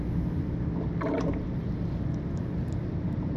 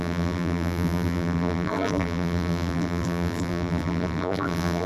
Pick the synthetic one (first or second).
second